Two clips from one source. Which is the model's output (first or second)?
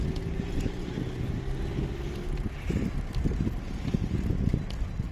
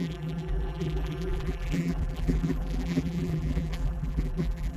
second